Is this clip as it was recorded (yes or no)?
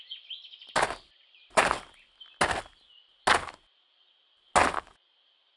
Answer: yes